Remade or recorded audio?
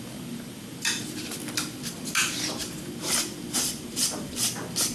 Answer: recorded